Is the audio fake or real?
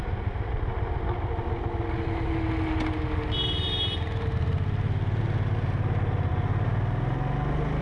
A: real